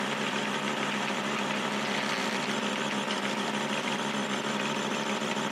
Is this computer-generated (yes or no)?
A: no